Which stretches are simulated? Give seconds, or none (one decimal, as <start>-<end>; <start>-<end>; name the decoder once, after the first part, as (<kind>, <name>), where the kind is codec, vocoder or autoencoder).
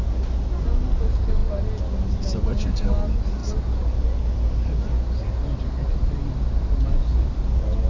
none